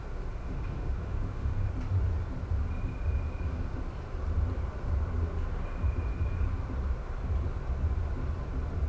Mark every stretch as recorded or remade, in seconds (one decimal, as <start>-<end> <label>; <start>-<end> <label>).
0.0-0.4 recorded; 0.4-1.7 remade; 1.7-8.9 recorded